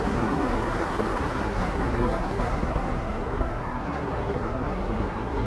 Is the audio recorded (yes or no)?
no